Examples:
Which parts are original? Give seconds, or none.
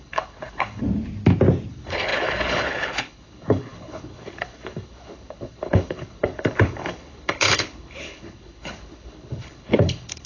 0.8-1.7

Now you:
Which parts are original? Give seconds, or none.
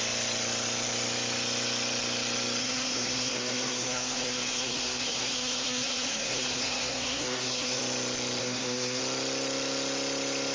0.0-2.6; 7.8-8.4; 9.0-10.5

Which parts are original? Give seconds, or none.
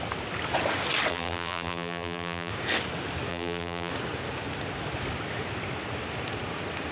0.0-1.1; 2.5-3.3; 3.9-6.9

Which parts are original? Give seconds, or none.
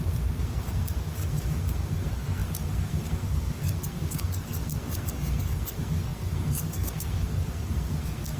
none